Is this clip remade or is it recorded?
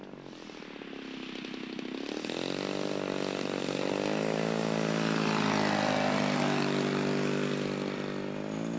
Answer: recorded